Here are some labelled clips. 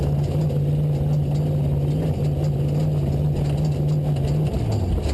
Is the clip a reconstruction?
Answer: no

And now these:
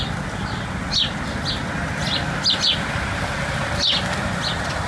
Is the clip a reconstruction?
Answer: no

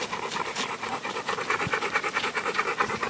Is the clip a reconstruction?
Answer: no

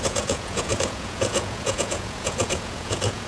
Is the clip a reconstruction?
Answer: yes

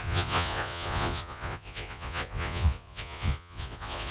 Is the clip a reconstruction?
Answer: yes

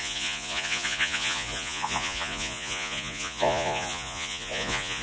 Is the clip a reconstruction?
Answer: yes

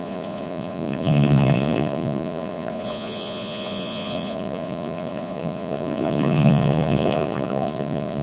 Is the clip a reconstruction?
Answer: yes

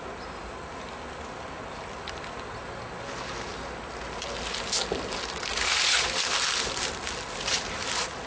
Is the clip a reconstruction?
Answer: no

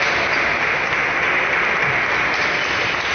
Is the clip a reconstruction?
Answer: no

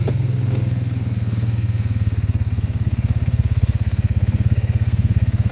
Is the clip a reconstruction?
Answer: yes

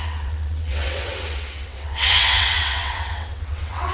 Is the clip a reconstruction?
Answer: yes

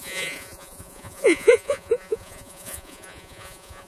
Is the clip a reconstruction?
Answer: yes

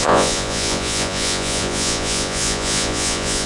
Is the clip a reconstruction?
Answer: yes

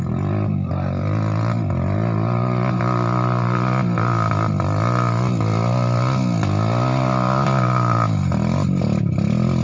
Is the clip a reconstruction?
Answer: no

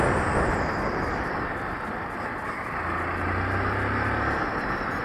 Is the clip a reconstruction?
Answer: no